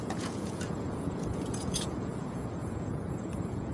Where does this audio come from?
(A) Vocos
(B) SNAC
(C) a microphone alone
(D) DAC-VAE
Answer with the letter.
A